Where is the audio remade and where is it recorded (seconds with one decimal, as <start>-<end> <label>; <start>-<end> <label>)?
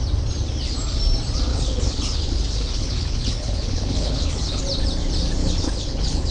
0.0-1.5 recorded; 1.5-4.6 remade; 4.6-5.4 recorded; 5.4-6.3 remade